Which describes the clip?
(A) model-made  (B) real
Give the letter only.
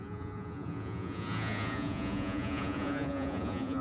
A